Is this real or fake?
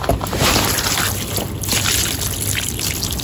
real